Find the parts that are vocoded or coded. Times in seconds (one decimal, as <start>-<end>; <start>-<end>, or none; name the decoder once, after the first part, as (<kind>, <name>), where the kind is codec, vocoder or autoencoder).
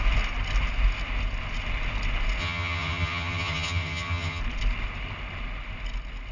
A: 2.4-4.4 (vocoder, HiFi-GAN)